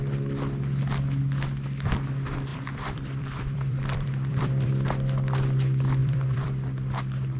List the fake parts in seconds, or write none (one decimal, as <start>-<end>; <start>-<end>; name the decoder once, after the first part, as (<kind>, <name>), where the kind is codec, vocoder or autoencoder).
2.5-4.7 (vocoder, BigVGAN v2); 6.0-6.5